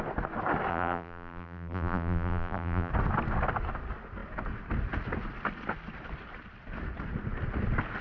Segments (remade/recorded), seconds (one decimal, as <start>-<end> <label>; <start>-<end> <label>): 0.0-0.7 recorded; 0.7-2.9 remade; 2.9-8.0 recorded